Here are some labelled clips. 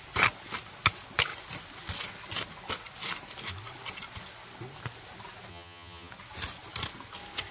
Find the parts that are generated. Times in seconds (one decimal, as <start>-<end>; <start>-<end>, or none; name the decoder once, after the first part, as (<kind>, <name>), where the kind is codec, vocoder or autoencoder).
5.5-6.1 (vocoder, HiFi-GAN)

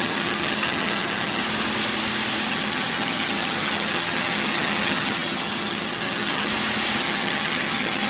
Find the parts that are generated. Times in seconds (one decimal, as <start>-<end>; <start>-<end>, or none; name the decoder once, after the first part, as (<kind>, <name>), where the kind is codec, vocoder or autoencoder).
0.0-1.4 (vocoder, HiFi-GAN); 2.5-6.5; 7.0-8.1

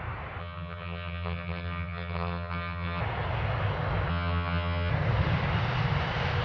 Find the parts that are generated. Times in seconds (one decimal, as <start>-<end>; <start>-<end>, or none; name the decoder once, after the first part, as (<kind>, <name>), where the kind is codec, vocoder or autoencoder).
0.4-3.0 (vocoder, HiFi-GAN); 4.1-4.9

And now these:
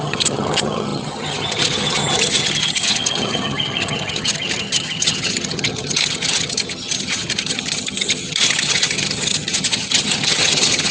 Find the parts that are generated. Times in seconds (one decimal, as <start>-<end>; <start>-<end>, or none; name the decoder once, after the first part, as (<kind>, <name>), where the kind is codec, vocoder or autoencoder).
0.0-10.9 (vocoder, HiFi-GAN)